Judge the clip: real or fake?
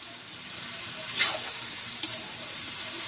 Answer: fake